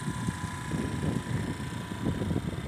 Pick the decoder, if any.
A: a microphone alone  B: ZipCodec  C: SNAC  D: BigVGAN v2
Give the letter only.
A